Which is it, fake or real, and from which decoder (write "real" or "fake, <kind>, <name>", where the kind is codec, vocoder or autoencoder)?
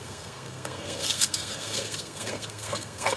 fake, codec, SNAC